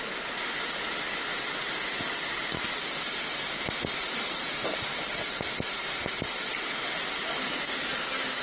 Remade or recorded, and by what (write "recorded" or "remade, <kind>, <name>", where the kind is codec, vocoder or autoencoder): recorded